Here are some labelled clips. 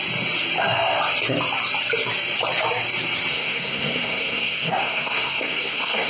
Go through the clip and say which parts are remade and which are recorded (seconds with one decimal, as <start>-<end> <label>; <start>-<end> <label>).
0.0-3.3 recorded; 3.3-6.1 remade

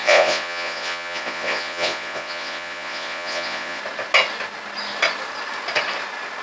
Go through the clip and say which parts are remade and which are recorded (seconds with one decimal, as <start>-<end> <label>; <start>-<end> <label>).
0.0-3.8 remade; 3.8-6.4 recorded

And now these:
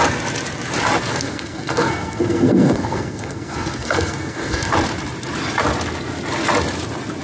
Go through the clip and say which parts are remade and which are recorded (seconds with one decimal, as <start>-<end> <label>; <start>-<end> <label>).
0.0-1.1 recorded; 1.1-4.7 remade; 4.7-7.2 recorded